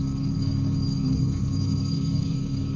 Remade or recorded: remade